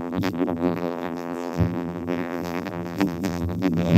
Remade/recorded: remade